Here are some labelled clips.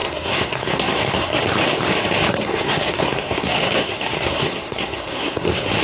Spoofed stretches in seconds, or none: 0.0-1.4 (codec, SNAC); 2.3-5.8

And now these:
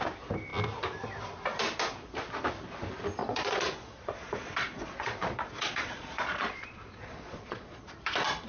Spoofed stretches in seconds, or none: 3.2-7.8 (vocoder, Vocos)

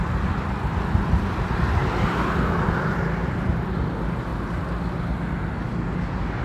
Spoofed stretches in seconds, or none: none

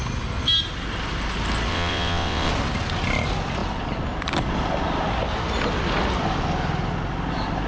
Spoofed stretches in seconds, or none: 1.7-2.5 (vocoder, WaveNeXt)

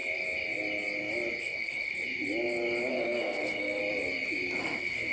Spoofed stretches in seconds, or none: 1.4-1.9 (codec, SNAC); 2.9-3.8; 4.6-5.1

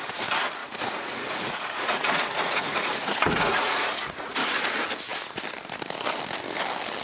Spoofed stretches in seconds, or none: 0.6-4.3 (vocoder, Vocos)